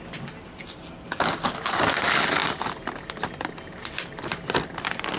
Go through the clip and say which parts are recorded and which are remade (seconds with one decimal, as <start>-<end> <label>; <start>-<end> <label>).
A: 0.0-5.2 recorded